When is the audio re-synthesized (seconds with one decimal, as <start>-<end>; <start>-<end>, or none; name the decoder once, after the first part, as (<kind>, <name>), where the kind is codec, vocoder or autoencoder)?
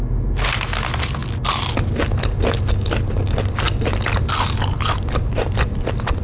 none